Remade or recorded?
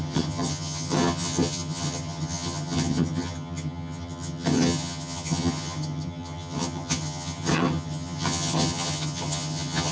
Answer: remade